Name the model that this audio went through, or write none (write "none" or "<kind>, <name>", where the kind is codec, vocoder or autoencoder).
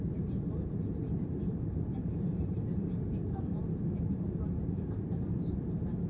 vocoder, BigVGAN v2